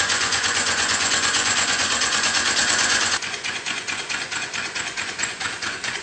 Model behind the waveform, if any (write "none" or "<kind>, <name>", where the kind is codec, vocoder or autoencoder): vocoder, Vocos